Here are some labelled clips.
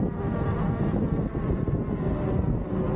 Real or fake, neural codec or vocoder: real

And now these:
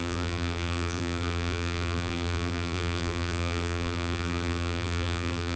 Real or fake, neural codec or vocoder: fake, vocoder, BigVGAN v2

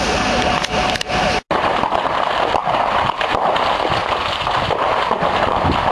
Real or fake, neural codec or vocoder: real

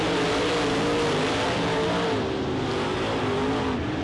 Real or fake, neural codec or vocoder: real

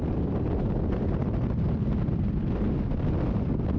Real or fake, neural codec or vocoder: real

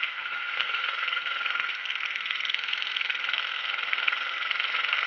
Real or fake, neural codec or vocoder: fake, codec, SNAC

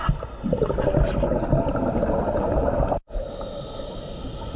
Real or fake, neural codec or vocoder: real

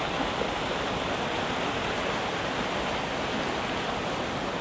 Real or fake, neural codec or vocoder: real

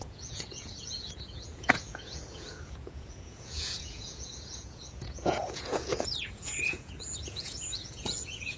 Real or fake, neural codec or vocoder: fake, vocoder, Vocos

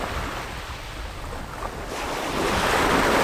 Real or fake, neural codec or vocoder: real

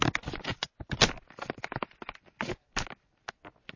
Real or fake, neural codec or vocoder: real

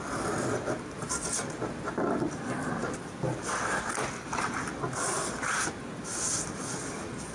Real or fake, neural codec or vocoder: real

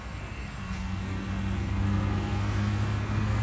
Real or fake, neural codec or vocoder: fake, codec, SNAC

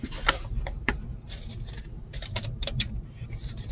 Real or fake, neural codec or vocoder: fake, vocoder, BigVGAN v2